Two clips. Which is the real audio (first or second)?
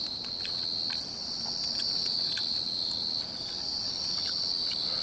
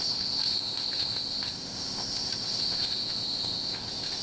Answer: first